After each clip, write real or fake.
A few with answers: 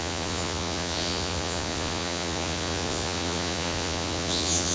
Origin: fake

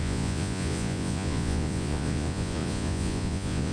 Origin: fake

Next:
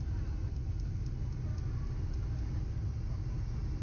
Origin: real